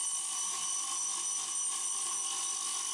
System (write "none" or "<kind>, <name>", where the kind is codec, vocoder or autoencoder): none